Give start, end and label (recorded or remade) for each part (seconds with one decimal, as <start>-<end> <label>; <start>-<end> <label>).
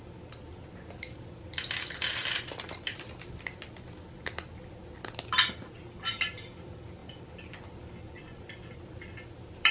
0.0-9.7 recorded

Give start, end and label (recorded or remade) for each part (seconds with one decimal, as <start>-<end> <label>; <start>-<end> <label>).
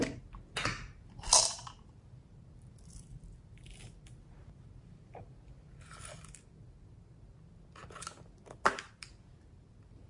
0.0-10.1 recorded